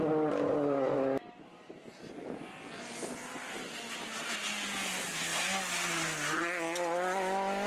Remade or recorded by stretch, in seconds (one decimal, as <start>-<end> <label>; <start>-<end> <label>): 0.0-7.7 recorded